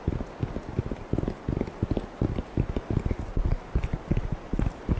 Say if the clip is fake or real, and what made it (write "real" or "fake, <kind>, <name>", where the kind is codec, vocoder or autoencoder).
real